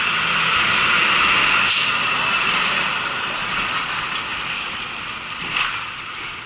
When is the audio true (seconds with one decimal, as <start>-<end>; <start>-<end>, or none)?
1.0-2.5